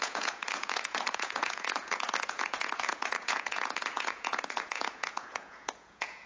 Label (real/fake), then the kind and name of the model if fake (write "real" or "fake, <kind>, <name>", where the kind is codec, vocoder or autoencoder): fake, vocoder, Vocos